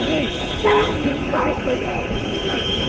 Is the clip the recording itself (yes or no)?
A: no